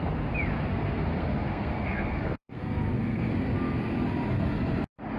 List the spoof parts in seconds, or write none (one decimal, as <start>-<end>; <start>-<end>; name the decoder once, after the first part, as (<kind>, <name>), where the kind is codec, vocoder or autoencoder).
0.7-3.3 (codec, SNAC)

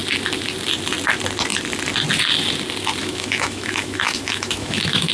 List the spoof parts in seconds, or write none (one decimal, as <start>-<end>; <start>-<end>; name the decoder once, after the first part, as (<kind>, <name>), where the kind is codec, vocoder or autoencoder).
3.0-5.1 (autoencoder, DAC-VAE)